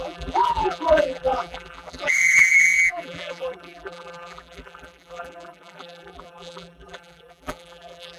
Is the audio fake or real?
fake